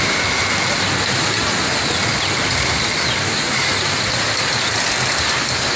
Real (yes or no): yes